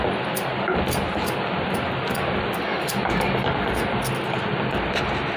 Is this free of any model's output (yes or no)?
yes